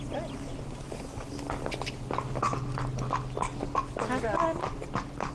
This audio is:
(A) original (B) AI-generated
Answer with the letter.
A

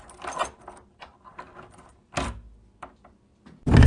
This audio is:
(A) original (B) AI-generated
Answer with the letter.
A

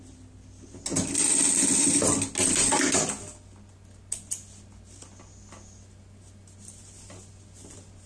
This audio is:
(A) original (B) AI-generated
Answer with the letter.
A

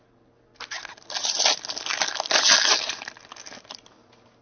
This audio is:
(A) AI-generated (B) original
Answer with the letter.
B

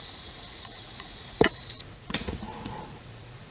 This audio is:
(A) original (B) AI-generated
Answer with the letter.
B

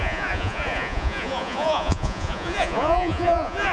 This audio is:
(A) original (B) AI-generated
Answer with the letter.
B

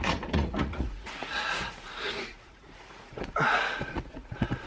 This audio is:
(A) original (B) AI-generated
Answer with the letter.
B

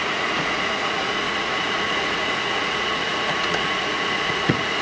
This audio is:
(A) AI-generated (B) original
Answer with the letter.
A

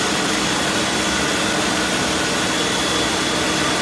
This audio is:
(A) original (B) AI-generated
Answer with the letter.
A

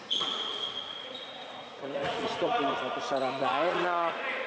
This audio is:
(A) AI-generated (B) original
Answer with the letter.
A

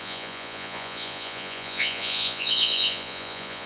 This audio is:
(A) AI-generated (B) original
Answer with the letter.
A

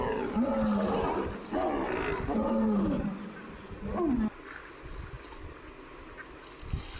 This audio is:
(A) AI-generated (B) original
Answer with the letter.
B